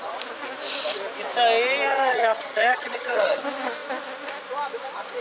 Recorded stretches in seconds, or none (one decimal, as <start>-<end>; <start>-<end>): 0.0-1.9; 3.4-5.2